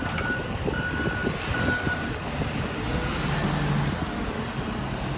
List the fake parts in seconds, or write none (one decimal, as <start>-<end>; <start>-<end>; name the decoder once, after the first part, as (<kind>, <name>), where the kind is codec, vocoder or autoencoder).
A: none